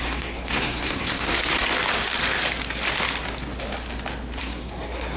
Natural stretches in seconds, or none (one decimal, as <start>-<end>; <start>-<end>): 1.3-4.4